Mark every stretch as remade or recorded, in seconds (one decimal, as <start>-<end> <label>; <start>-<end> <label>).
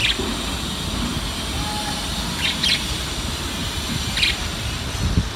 0.0-5.4 recorded